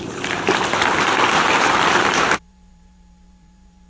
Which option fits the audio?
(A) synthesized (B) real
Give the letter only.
A